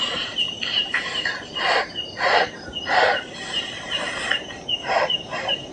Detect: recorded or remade remade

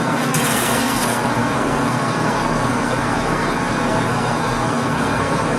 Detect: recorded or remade remade